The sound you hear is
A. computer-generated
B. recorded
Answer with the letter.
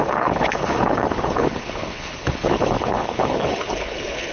A